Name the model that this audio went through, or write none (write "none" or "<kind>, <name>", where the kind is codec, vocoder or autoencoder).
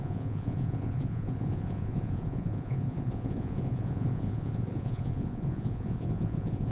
vocoder, Vocos